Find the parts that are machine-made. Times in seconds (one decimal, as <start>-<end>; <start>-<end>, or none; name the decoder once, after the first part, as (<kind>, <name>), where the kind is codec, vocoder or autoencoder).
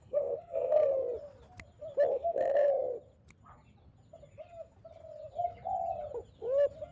0.0-0.9 (codec, SNAC); 2.1-2.7